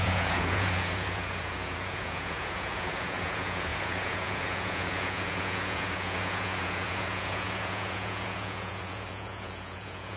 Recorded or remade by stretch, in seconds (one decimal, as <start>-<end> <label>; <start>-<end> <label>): 0.0-10.2 remade